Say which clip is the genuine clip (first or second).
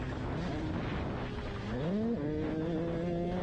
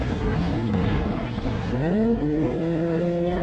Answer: first